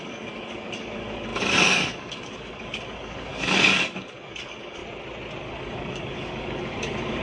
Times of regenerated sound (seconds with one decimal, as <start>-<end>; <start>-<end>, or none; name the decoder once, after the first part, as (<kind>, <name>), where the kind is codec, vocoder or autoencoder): 0.0-4.8 (codec, DAC); 5.4-7.2